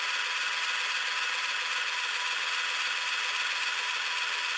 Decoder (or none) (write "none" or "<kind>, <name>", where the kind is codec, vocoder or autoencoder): none